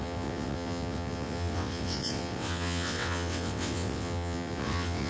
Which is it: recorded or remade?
remade